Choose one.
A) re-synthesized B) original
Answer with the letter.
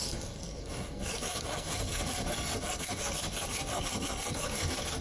A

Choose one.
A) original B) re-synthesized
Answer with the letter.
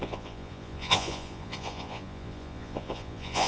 B